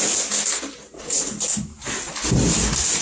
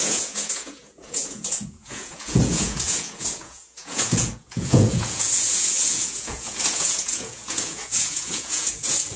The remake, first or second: second